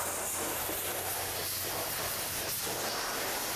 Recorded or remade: recorded